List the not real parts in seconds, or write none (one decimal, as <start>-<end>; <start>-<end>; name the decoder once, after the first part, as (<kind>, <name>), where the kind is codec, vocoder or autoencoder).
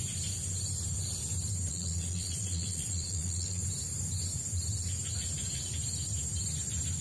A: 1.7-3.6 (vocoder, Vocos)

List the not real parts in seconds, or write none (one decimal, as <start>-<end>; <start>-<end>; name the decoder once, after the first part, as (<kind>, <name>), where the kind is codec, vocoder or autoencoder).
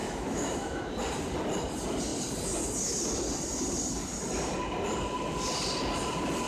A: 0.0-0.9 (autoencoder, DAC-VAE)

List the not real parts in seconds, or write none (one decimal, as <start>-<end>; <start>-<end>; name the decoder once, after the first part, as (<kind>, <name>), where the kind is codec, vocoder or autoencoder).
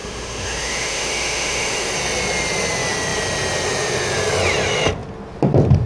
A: 0.0-1.9 (autoencoder, DAC-VAE)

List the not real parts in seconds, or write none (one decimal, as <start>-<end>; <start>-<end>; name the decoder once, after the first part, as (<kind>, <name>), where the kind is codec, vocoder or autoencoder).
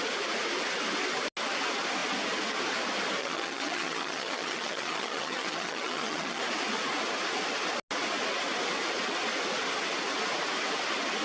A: 3.2-6.4 (vocoder, HiFi-GAN)